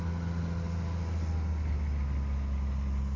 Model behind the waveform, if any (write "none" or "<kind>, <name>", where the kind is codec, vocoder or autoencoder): none